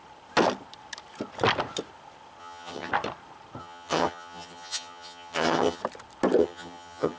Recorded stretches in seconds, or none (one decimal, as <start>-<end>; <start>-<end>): 0.0-2.4; 2.9-3.6; 5.8-6.4